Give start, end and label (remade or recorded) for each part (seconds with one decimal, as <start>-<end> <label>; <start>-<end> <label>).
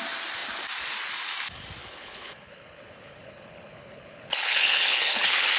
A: 0.0-1.8 recorded; 1.8-5.6 remade